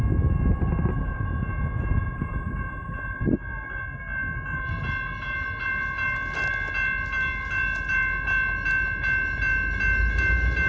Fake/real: real